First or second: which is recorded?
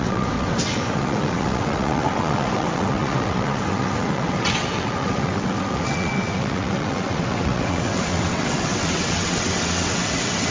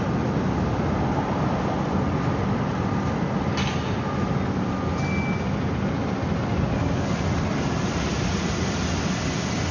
second